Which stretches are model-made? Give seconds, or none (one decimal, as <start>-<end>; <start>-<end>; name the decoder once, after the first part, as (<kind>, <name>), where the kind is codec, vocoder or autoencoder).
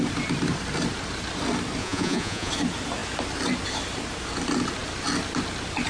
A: 1.8-2.5 (vocoder, Vocos)